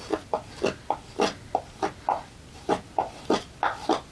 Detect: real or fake real